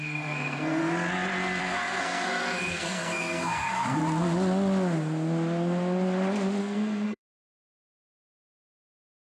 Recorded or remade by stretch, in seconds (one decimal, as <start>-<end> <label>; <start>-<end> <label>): 0.0-0.8 remade; 0.8-1.6 recorded; 1.6-4.0 remade; 4.0-6.6 recorded; 6.6-9.3 remade